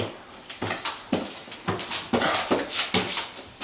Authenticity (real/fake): real